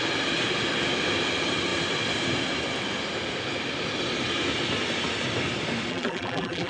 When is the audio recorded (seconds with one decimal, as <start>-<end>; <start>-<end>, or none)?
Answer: 0.0-5.9